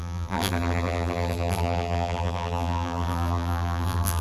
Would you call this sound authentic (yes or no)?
no